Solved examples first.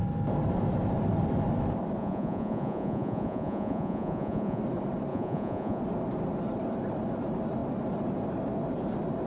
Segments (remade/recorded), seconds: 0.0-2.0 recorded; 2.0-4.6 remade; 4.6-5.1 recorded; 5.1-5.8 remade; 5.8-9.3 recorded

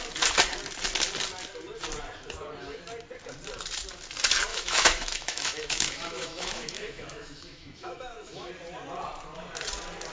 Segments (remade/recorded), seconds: 0.0-4.5 recorded; 4.5-8.5 remade; 8.5-10.1 recorded

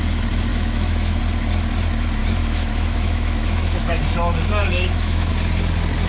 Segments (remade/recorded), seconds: 0.0-0.5 recorded; 0.5-1.2 remade; 1.2-2.2 recorded; 2.2-4.0 remade; 4.0-4.6 recorded; 4.6-5.3 remade; 5.3-6.1 recorded

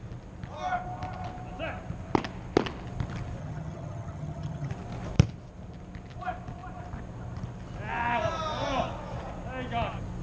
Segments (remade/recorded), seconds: 0.0-3.4 recorded; 3.4-4.7 remade; 4.7-10.2 recorded

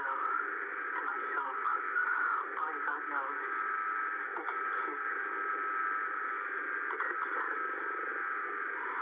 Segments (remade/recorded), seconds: 0.0-9.0 recorded

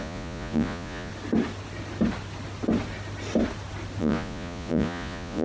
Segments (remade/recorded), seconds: 0.0-1.1 remade; 1.1-4.0 recorded; 4.0-5.4 remade

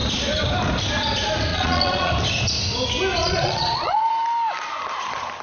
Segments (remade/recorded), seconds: 0.0-1.5 recorded; 1.5-2.1 remade; 2.1-3.2 recorded; 3.2-4.1 remade; 4.1-5.4 recorded